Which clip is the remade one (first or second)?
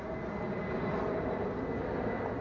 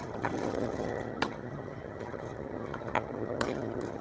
second